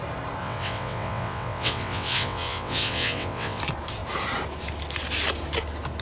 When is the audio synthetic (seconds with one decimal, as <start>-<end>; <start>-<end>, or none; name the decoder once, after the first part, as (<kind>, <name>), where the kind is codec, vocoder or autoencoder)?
0.4-3.6 (vocoder, WaveNeXt)